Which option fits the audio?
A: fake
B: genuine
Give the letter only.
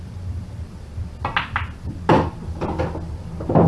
B